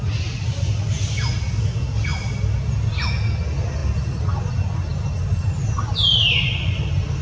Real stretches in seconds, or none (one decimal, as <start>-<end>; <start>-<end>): 0.0-7.2